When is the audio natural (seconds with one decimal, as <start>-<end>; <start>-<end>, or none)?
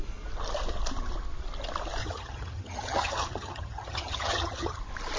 0.0-2.0; 4.8-5.2